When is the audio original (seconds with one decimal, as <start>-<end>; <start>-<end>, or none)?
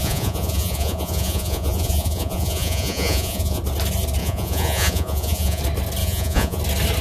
3.6-4.2; 5.6-6.0; 6.6-7.0